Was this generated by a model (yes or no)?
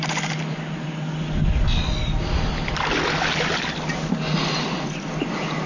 no